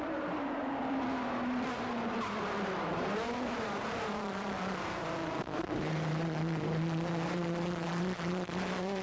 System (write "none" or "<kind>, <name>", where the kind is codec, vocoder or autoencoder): vocoder, BigVGAN v2